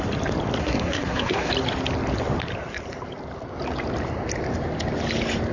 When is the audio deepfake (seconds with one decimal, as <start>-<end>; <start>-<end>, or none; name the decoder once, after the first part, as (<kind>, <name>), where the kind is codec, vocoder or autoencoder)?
0.6-1.5 (codec, SNAC)